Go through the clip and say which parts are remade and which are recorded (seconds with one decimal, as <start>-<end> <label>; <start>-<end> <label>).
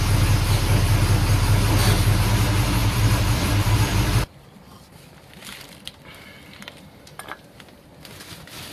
0.0-2.8 recorded; 2.8-6.1 remade; 6.1-8.7 recorded